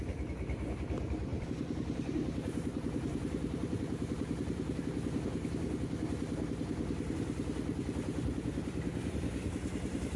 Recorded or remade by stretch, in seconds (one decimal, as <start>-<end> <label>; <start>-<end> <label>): 0.0-1.3 recorded; 1.3-4.8 remade; 4.8-10.2 recorded